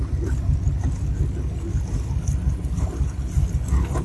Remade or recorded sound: recorded